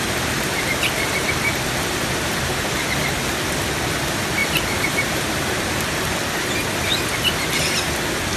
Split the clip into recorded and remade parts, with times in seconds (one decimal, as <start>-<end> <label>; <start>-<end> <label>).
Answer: 0.0-4.4 recorded; 4.4-5.4 remade; 5.4-8.4 recorded